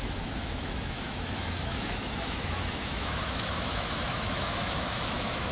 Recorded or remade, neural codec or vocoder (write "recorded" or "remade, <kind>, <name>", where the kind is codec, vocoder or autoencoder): remade, autoencoder, DAC-VAE